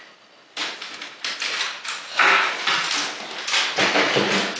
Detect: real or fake real